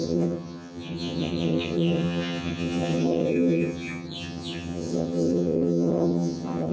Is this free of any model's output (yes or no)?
no